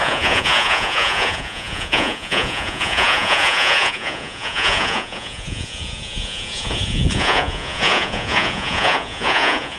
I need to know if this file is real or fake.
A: fake